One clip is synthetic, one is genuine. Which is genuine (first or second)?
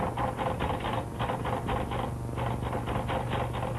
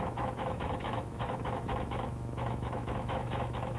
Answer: first